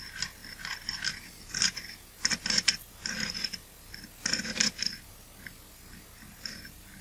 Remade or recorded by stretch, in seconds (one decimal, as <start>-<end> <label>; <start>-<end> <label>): 0.0-7.0 recorded